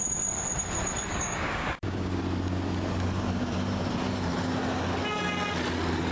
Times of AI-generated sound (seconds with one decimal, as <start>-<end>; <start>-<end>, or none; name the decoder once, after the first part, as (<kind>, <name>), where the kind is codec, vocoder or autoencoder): 1.1-2.2 (codec, DAC)